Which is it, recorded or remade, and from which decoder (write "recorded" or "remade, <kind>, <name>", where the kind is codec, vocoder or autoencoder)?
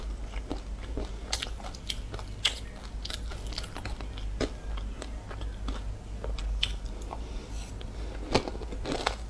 recorded